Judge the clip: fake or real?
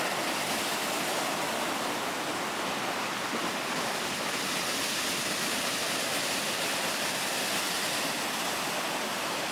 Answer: real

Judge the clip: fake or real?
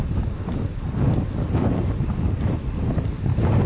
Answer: real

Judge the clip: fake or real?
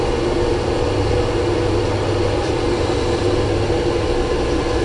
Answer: real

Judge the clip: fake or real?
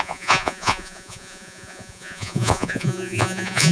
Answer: fake